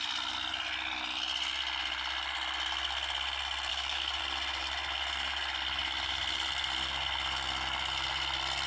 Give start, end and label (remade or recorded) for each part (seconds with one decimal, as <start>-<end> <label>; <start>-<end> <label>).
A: 0.0-3.7 recorded; 3.7-4.2 remade; 4.2-8.7 recorded